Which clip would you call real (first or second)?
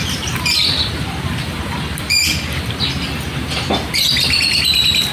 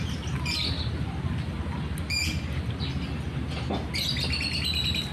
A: second